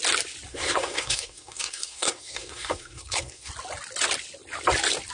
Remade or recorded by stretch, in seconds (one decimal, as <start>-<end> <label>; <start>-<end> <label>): 0.0-0.5 recorded; 0.5-3.5 remade; 3.5-5.1 recorded